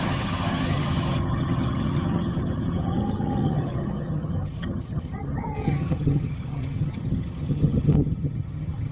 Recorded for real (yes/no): no